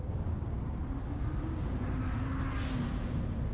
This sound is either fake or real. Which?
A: real